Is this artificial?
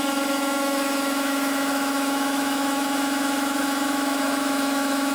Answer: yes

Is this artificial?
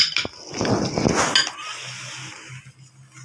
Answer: no